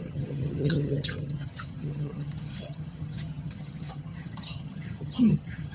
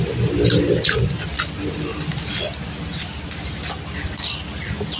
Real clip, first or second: second